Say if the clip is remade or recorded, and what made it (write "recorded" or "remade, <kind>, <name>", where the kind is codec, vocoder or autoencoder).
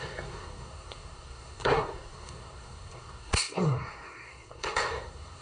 remade, codec, SNAC